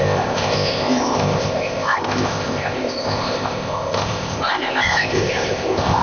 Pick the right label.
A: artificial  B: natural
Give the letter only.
A